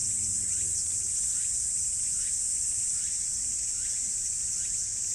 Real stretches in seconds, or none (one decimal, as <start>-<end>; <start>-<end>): 0.0-5.1